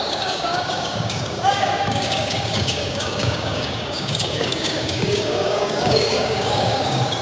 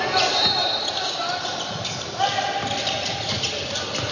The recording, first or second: second